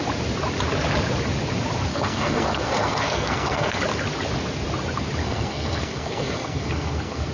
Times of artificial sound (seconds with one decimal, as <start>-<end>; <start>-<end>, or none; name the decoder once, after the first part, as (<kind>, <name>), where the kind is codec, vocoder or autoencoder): 1.9-3.8 (codec, SNAC); 5.2-7.3